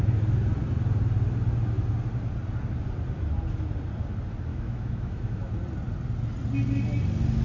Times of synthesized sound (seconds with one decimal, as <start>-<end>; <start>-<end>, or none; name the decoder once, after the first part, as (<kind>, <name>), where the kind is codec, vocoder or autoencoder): 4.5-5.5 (autoencoder, DAC-VAE)

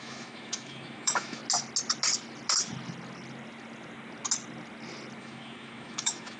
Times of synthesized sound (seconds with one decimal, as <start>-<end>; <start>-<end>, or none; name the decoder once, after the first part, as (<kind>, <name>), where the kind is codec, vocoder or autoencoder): 0.0-1.4 (autoencoder, DAC-VAE); 5.2-6.4

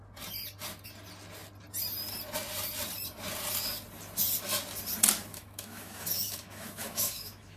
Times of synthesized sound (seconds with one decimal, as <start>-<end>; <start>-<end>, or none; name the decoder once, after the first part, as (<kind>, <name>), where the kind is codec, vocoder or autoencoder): 5.3-7.6 (autoencoder, DAC-VAE)

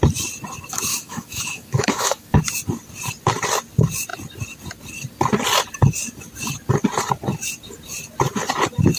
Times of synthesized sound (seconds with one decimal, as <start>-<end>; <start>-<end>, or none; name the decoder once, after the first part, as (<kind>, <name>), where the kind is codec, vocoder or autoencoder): 0.9-2.4 (autoencoder, DAC-VAE)

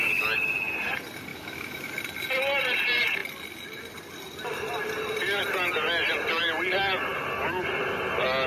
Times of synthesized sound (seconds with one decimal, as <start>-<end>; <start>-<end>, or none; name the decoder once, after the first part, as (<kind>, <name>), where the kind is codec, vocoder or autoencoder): 1.3-2.0 (autoencoder, DAC-VAE)

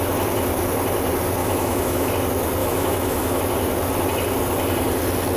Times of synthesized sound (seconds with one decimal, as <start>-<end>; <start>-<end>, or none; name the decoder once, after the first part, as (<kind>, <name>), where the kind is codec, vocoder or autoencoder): 1.4-2.1 (autoencoder, DAC-VAE); 2.6-3.4

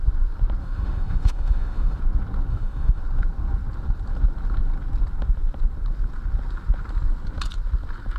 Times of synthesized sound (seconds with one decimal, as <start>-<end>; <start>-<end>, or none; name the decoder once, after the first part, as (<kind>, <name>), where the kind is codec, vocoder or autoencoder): 0.6-2.0 (autoencoder, DAC-VAE); 2.5-3.0

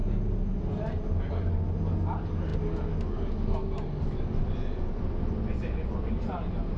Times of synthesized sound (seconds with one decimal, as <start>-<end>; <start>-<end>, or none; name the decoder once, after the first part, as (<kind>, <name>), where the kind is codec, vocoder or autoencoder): none